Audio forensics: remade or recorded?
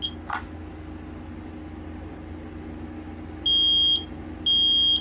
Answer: recorded